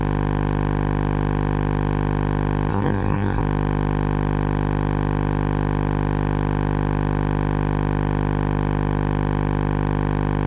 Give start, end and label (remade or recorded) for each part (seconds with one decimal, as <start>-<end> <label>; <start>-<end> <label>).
0.0-2.7 recorded; 2.7-3.4 remade; 3.4-10.5 recorded